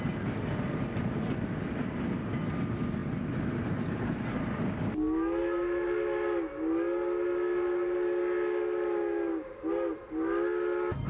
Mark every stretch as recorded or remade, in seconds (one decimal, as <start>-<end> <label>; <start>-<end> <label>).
0.0-11.1 recorded